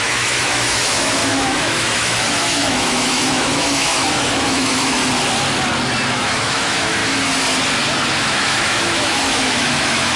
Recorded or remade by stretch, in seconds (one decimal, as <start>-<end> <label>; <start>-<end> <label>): 0.0-5.0 remade; 5.0-6.1 recorded; 6.1-7.0 remade; 7.0-8.2 recorded; 8.2-10.2 remade